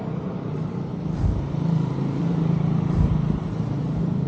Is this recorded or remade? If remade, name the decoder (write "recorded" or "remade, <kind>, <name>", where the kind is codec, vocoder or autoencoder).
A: remade, vocoder, BigVGAN v2